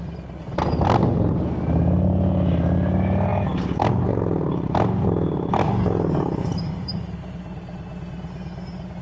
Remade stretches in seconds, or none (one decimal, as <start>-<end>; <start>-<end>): none